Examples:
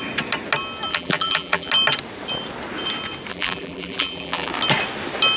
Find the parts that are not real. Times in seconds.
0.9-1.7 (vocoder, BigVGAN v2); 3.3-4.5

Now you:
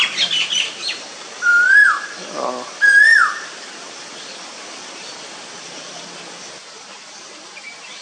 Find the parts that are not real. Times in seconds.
0.0-0.8 (vocoder, BigVGAN v2); 1.5-6.3

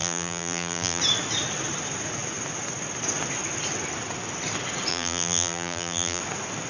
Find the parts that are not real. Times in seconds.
0.0-1.0 (vocoder, BigVGAN v2); 4.9-6.2